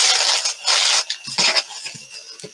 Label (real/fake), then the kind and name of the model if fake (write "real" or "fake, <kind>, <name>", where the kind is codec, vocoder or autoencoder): real